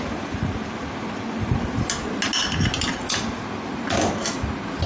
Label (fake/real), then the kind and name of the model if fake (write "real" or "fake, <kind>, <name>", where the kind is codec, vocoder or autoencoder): real